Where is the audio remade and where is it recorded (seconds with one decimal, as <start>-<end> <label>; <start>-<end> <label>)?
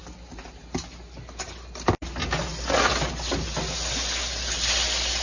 0.0-5.2 recorded